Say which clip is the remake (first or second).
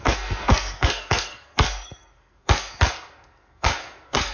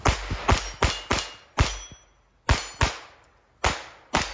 first